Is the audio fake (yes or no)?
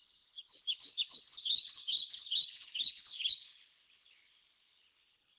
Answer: yes